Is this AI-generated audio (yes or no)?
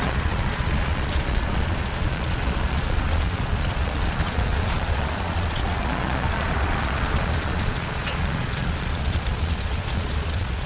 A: yes